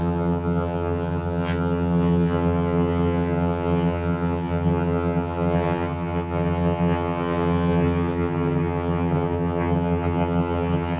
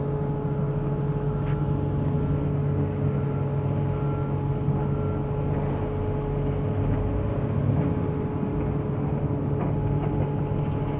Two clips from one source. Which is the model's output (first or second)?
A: first